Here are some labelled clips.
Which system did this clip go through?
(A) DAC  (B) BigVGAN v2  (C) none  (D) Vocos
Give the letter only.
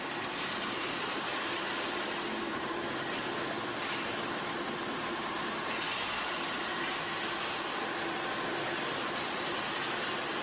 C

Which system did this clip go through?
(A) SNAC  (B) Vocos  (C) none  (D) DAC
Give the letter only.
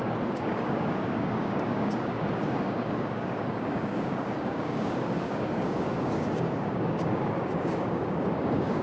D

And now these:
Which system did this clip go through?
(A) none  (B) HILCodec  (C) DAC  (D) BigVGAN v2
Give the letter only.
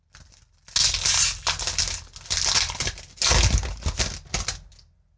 A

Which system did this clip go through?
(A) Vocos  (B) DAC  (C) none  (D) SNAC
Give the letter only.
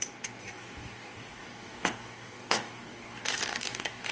B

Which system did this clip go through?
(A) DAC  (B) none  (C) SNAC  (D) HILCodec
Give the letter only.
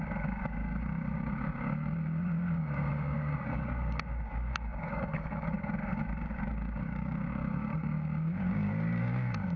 A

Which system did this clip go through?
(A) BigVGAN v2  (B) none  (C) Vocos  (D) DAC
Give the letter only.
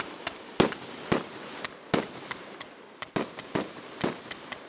B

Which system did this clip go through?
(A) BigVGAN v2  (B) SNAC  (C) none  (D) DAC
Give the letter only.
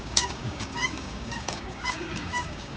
D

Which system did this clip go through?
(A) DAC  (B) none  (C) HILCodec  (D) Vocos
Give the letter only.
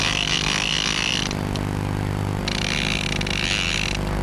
B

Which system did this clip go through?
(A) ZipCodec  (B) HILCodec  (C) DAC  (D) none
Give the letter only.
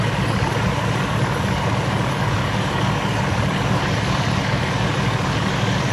C